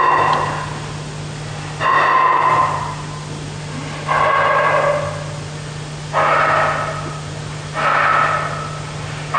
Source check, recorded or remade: recorded